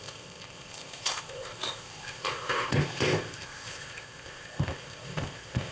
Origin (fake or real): fake